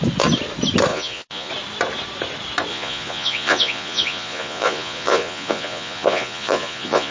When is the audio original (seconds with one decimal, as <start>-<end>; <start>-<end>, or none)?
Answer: 0.0-0.9; 1.5-2.7